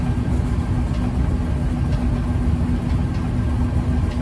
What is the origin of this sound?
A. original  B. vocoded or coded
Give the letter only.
A